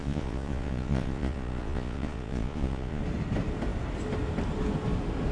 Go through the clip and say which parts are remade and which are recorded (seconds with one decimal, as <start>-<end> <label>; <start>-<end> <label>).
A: 0.0-3.0 remade; 3.0-5.3 recorded